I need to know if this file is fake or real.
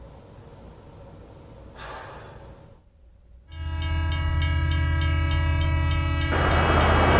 real